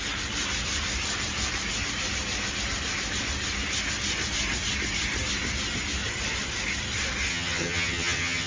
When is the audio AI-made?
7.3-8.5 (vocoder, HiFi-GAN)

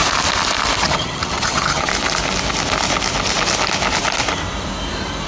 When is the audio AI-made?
0.8-1.9 (vocoder, HiFi-GAN)

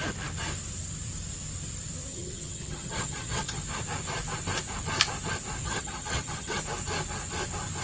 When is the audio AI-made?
2.1-3.6 (vocoder, HiFi-GAN); 5.6-6.6

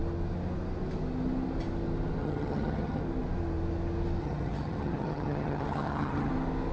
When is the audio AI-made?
2.2-3.0 (vocoder, HiFi-GAN); 4.2-6.3

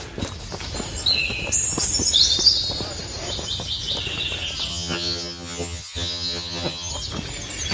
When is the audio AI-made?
4.7-6.9 (vocoder, HiFi-GAN)